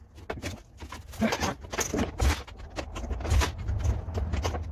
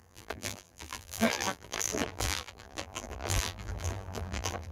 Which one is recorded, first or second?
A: first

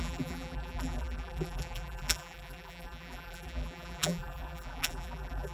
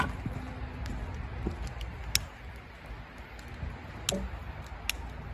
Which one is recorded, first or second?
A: second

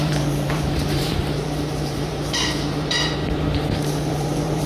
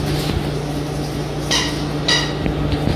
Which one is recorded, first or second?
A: second